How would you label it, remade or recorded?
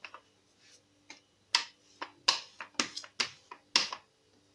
recorded